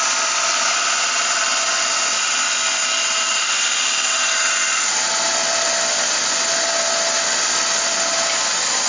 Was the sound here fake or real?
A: real